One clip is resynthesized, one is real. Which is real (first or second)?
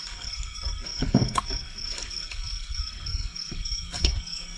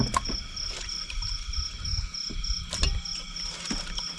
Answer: second